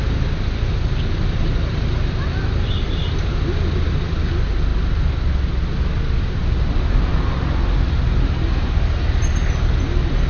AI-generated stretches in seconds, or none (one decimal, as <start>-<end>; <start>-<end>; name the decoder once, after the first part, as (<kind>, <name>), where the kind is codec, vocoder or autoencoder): none